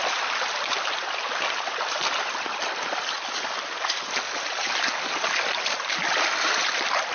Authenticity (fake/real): real